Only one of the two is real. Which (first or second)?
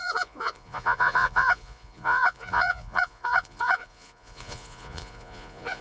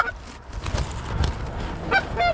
second